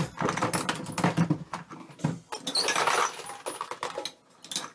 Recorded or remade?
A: recorded